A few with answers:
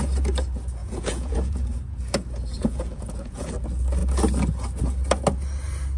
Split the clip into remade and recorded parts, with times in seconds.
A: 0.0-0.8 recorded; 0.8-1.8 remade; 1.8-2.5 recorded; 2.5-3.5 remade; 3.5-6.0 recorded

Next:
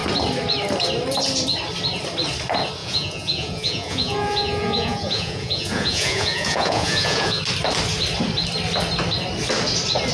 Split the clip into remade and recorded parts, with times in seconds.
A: 0.0-2.8 recorded; 2.8-7.4 remade; 7.4-10.1 recorded

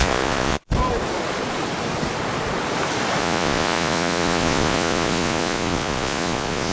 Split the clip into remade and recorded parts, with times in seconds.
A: 0.0-0.7 remade; 0.7-3.2 recorded; 3.2-6.7 remade

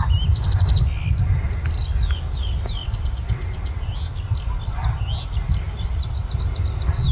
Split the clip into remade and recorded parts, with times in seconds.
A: 0.0-7.1 recorded

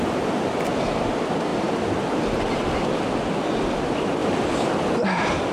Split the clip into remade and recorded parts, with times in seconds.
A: 0.0-5.5 recorded

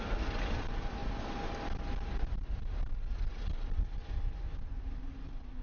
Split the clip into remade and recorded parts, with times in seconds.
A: 0.0-5.6 recorded